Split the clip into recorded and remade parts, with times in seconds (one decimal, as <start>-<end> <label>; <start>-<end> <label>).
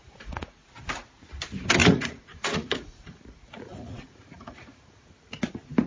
0.0-0.7 remade; 0.7-1.8 recorded; 1.8-5.3 remade; 5.3-5.9 recorded